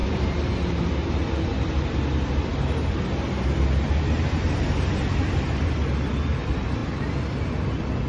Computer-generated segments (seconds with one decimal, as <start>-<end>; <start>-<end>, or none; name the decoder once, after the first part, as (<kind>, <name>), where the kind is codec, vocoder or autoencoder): 0.0-0.7 (vocoder, BigVGAN v2)